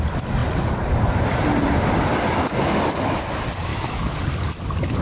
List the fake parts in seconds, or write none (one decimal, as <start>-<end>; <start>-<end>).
3.7-4.2